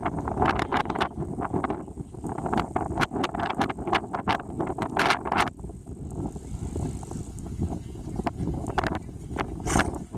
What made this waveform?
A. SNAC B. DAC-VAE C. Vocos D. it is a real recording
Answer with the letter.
D